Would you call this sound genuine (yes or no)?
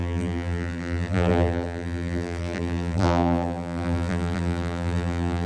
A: no